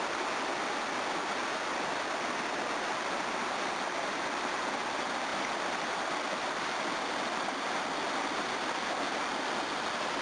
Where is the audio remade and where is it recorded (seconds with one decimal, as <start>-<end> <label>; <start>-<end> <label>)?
0.0-10.2 recorded